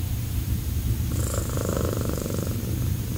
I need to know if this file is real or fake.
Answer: fake